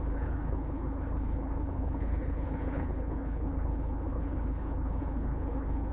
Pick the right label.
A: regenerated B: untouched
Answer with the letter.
A